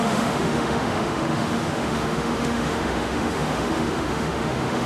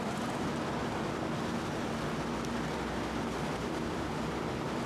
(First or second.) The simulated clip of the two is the first